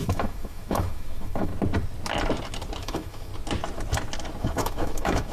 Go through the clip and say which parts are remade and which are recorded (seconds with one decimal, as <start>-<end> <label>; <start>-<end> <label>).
0.0-1.5 remade; 1.5-2.8 recorded; 2.8-3.3 remade; 3.3-4.4 recorded; 4.4-5.3 remade